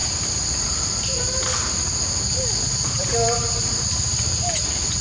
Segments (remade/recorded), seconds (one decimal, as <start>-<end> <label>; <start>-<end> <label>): 0.0-5.0 recorded